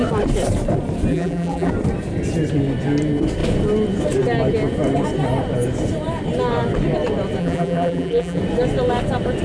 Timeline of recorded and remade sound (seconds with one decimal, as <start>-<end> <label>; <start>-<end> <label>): 0.0-1.1 recorded; 1.1-1.7 remade; 1.7-7.4 recorded; 7.4-8.4 remade; 8.4-9.4 recorded